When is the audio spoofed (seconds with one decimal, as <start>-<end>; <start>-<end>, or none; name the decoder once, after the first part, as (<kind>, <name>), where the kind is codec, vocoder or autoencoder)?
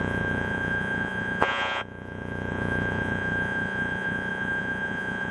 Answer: 0.0-5.3 (vocoder, Vocos)